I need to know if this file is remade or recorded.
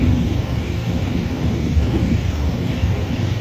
remade